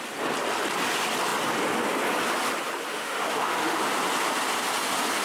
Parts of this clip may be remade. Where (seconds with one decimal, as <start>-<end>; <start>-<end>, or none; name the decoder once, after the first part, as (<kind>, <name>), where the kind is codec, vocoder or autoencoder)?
2.9-3.8 (autoencoder, DAC-VAE)